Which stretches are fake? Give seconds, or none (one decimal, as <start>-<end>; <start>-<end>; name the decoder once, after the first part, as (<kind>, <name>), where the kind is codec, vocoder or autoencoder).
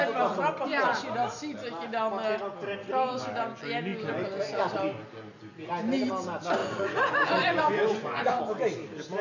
6.6-8.4 (vocoder, Vocos)